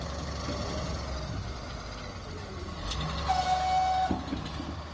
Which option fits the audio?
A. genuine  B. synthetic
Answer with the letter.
A